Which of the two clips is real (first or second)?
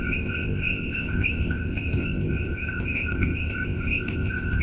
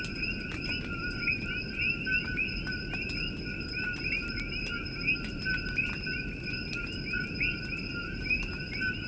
second